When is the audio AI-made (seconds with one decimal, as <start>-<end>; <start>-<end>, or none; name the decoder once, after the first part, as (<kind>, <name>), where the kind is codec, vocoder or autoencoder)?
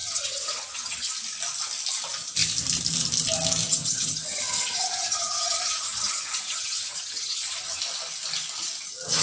0.0-1.1 (vocoder, HiFi-GAN); 3.7-7.8